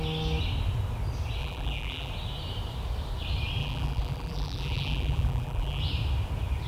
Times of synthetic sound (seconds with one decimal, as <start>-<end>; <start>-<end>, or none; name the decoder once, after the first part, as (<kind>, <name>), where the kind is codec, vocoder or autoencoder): 1.4-2.1 (vocoder, BigVGAN v2); 3.6-5.8